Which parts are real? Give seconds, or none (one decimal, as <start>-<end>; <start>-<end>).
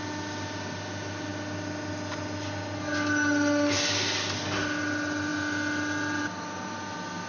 0.0-7.3